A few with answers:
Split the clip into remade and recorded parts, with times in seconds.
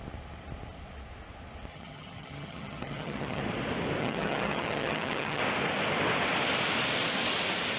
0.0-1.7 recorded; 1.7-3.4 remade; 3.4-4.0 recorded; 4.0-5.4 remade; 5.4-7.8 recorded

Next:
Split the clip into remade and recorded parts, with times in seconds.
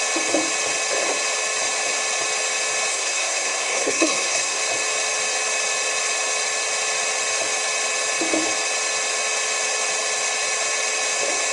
0.0-2.9 recorded; 2.9-4.6 remade; 4.6-11.5 recorded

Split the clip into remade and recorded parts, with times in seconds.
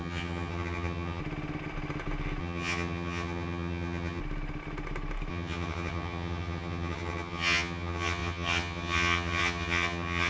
0.0-1.2 remade; 1.2-2.4 recorded; 2.4-4.2 remade; 4.2-5.3 recorded; 5.3-10.3 remade